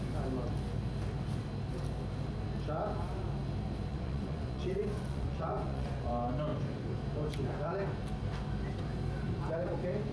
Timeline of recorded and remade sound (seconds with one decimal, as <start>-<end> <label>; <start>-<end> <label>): 0.0-3.9 recorded; 3.9-6.1 remade; 6.1-10.1 recorded